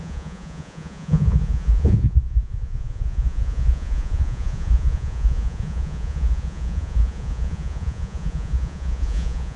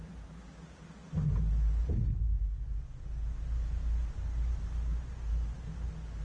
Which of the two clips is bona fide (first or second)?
second